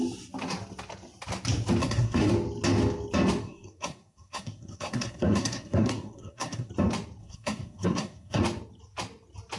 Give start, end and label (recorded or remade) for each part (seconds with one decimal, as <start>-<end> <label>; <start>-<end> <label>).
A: 0.0-1.8 recorded; 1.8-2.3 remade; 2.3-3.4 recorded; 3.4-6.7 remade; 6.7-7.2 recorded; 7.2-8.4 remade; 8.4-9.6 recorded